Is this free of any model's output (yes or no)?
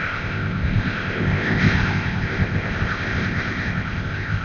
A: no